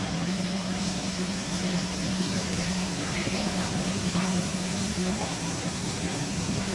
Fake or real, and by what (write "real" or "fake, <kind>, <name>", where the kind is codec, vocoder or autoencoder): fake, codec, SNAC